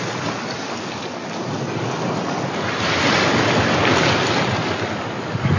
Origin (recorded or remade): recorded